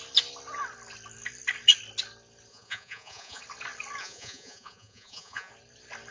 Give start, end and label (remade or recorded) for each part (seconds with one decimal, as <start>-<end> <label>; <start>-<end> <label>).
0.0-2.5 recorded; 2.5-3.4 remade; 3.4-4.0 recorded; 4.0-5.5 remade; 5.5-6.1 recorded